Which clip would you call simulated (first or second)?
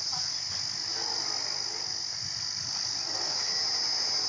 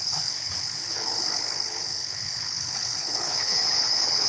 second